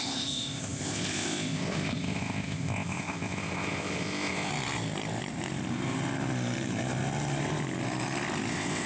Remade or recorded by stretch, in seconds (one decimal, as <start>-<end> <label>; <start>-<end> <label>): 0.0-4.5 remade; 4.5-8.5 recorded; 8.5-8.9 remade